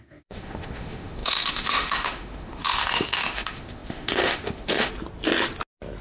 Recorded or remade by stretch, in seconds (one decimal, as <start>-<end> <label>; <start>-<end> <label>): 0.0-4.9 remade; 4.9-6.0 recorded